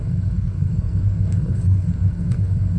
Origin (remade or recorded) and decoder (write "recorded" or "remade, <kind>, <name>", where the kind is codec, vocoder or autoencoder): remade, codec, SNAC